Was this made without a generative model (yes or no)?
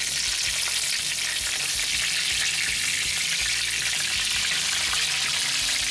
yes